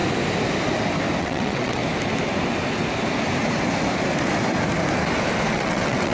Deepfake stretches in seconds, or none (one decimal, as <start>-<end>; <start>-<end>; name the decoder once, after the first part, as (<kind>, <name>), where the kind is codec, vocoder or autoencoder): 1.2-1.8 (vocoder, WaveNeXt); 5.5-6.1